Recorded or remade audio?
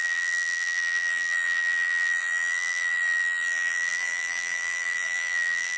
remade